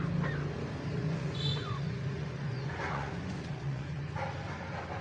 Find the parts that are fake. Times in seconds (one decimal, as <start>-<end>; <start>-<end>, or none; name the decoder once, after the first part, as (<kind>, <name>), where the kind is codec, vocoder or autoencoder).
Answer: 1.0-4.0 (vocoder, Vocos)